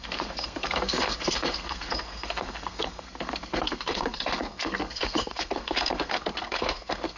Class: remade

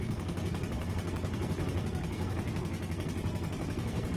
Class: remade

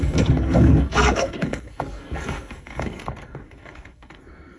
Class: remade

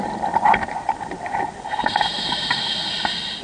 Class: recorded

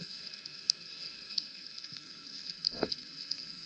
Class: remade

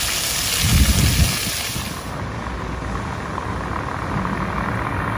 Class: recorded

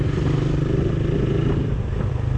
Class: recorded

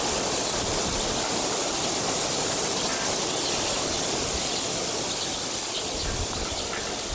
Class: recorded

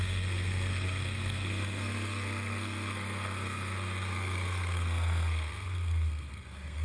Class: remade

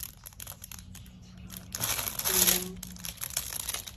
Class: recorded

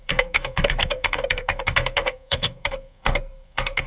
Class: remade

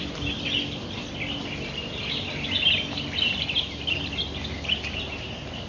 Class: recorded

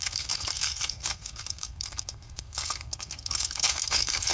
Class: remade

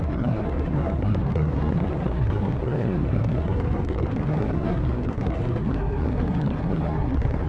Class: remade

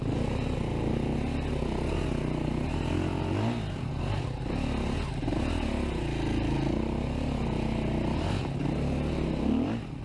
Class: recorded